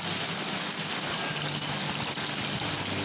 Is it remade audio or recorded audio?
recorded